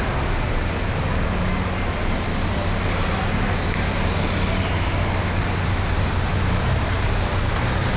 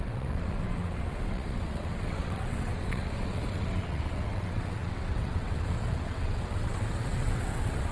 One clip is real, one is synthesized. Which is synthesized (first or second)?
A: second